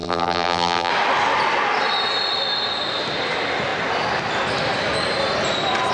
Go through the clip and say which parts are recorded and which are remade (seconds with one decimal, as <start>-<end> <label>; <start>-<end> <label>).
0.0-0.9 remade; 0.9-5.9 recorded